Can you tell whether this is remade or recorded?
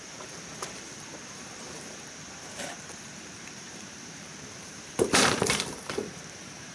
remade